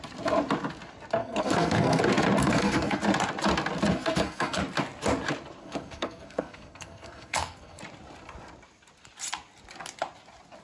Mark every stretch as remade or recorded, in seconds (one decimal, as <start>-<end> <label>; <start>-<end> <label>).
0.0-1.2 recorded; 1.2-2.0 remade; 2.0-2.4 recorded; 2.4-3.0 remade; 3.0-3.9 recorded; 3.9-4.6 remade; 4.6-5.6 recorded; 5.6-7.8 remade; 7.8-10.6 recorded